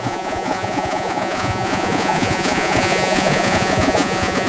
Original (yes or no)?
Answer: no